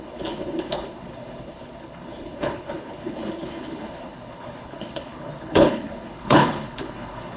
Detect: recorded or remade remade